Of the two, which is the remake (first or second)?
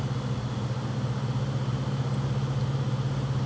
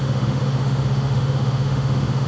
second